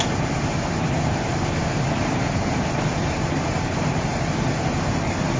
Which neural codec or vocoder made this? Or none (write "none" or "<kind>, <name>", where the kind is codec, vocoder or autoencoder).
vocoder, BigVGAN v2